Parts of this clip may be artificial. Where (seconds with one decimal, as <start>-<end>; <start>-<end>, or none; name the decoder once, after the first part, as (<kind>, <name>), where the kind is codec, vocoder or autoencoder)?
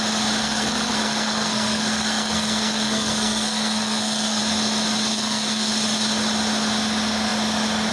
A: 0.4-4.4 (codec, SNAC); 5.1-5.7